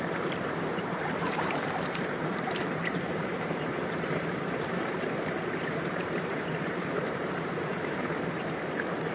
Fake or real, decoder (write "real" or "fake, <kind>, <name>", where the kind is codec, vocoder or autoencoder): fake, vocoder, BigVGAN v2